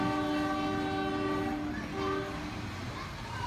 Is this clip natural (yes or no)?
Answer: yes